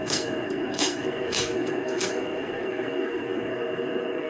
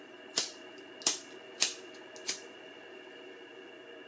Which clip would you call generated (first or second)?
first